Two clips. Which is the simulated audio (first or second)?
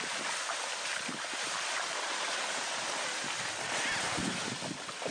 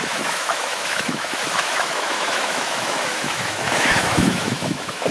second